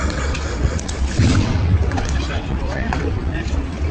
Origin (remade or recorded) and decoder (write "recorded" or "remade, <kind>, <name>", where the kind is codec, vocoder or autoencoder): remade, vocoder, WaveNeXt